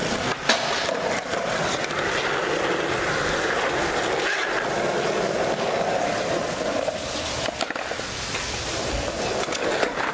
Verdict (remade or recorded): recorded